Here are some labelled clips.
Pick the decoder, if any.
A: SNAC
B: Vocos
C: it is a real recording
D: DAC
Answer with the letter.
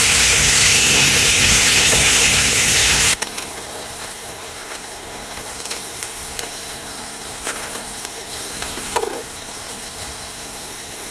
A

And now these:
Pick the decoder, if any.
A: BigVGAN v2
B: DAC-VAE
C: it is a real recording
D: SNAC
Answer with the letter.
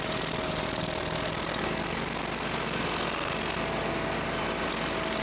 C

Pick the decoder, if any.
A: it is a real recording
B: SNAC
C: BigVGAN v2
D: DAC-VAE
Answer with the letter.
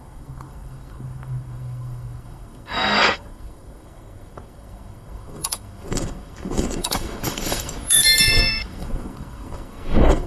B